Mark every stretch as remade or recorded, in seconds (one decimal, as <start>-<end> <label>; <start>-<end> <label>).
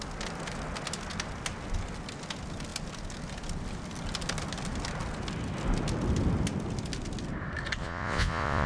0.0-7.8 recorded; 7.8-8.7 remade